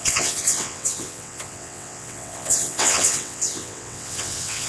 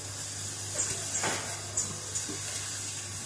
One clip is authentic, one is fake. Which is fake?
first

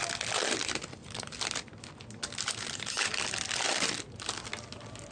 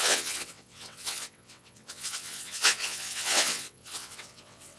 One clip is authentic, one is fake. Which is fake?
second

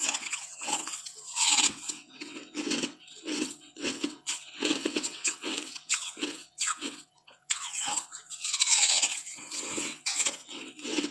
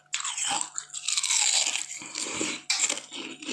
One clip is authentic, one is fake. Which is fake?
first